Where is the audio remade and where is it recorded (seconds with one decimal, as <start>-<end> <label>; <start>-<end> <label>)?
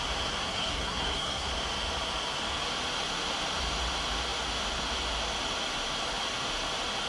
0.0-0.4 recorded; 0.4-1.5 remade; 1.5-7.1 recorded